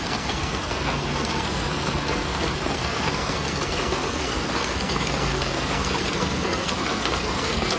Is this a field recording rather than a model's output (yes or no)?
no